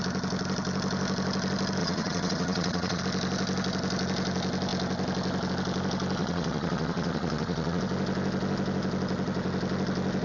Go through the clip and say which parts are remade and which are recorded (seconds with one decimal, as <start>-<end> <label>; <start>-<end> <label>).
0.0-1.8 recorded; 1.8-3.0 remade; 3.0-6.2 recorded; 6.2-7.8 remade; 7.8-10.2 recorded